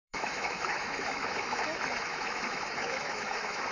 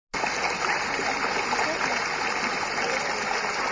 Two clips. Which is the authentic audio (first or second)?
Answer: second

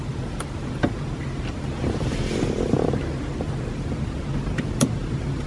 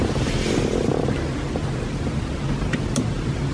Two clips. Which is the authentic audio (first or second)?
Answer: second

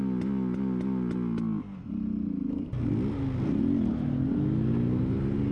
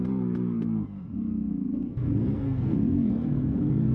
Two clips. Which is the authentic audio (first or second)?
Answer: first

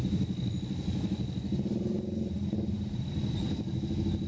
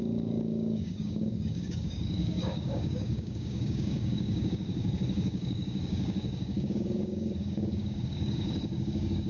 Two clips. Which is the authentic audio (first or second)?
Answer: first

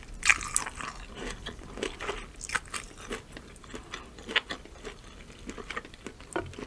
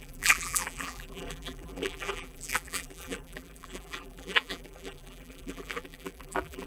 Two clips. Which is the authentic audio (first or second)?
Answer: first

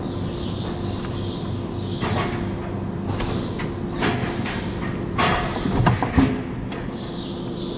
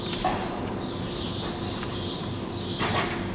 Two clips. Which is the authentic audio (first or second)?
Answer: first